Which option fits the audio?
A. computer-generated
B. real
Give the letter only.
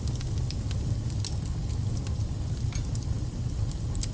B